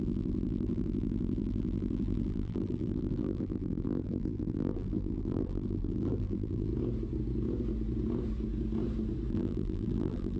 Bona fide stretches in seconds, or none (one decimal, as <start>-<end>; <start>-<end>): 6.7-9.3